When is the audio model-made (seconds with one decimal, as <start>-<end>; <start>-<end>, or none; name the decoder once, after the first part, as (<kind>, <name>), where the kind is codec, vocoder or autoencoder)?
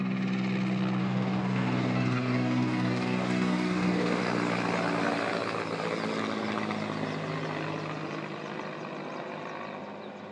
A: 1.0-4.2 (codec, DAC)